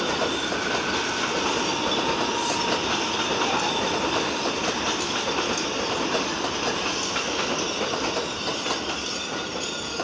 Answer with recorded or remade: recorded